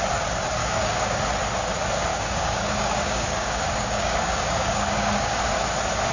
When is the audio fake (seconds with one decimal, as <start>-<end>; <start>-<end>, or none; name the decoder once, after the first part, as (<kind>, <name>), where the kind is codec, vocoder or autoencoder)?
0.6-1.2 (codec, DAC); 2.1-5.4